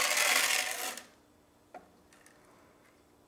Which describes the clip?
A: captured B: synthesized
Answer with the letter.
A